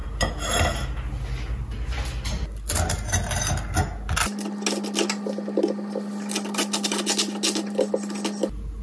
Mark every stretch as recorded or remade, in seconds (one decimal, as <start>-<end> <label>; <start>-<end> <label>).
0.0-8.8 recorded

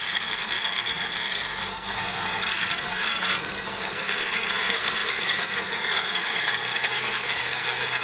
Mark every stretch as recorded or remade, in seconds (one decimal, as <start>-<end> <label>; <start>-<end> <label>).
0.0-8.0 remade

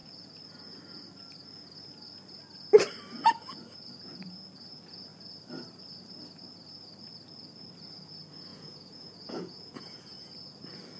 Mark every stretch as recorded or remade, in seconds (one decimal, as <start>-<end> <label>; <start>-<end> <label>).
0.0-8.5 recorded; 8.5-10.3 remade; 10.3-11.0 recorded

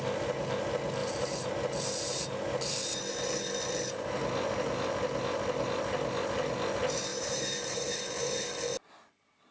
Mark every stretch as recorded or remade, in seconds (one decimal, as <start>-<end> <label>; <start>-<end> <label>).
0.0-1.0 recorded; 1.0-1.5 remade; 1.5-7.1 recorded; 7.1-8.5 remade; 8.5-9.5 recorded

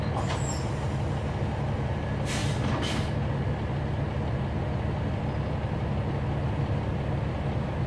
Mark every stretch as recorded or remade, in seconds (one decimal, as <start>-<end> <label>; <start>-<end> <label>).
0.0-7.9 recorded

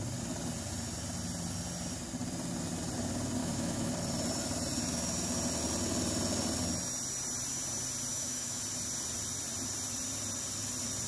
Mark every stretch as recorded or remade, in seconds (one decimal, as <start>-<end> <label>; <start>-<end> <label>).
0.0-3.4 recorded; 3.4-3.9 remade; 3.9-8.1 recorded; 8.1-8.6 remade; 8.6-11.1 recorded

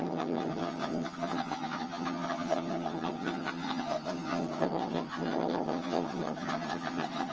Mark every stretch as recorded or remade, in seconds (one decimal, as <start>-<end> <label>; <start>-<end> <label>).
0.0-7.3 remade

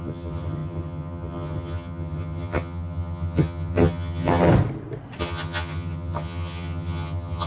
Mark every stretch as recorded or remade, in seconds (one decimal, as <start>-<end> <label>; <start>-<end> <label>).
0.0-4.5 remade; 4.5-5.2 recorded; 5.2-7.5 remade